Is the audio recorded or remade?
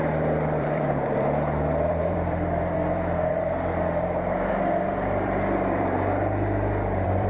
remade